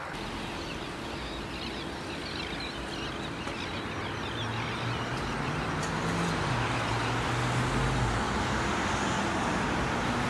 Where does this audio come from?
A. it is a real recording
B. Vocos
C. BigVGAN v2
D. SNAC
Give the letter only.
A